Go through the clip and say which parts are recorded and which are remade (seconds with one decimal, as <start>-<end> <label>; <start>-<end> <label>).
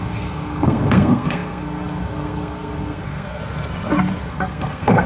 0.0-3.4 remade; 3.4-4.2 recorded; 4.2-5.1 remade